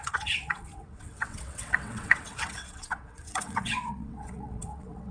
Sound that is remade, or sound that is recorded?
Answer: remade